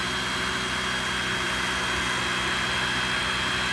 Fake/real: real